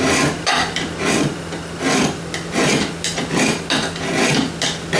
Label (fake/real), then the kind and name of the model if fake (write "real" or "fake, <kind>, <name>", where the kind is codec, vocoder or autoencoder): real